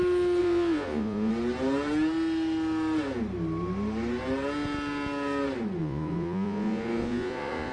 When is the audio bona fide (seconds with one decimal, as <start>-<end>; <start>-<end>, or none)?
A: 0.0-0.4; 1.3-5.8